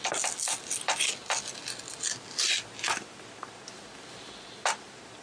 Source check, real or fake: real